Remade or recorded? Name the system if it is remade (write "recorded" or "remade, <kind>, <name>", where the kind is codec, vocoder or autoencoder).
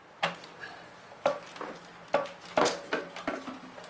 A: recorded